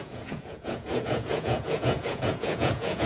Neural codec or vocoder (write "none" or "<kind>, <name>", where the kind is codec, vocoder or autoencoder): vocoder, Vocos